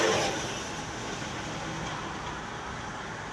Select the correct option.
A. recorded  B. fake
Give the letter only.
A